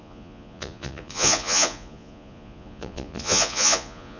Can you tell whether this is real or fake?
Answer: fake